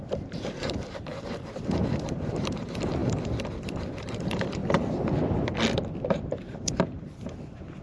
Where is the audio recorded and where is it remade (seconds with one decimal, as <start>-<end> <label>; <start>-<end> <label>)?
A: 0.0-4.6 remade; 4.6-6.1 recorded; 6.1-7.8 remade